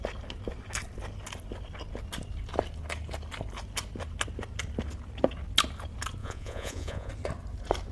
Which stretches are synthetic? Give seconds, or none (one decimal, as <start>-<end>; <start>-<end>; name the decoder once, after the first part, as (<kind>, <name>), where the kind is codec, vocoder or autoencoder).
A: 6.2-7.1 (vocoder, Vocos)